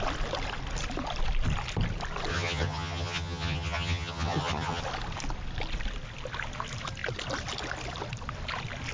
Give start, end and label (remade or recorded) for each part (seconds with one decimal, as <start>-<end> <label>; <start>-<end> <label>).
0.0-2.3 recorded; 2.3-4.8 remade; 4.8-8.9 recorded